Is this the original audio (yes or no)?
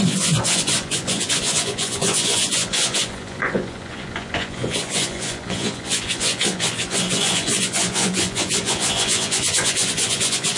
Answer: no